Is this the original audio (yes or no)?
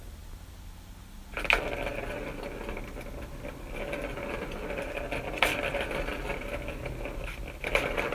yes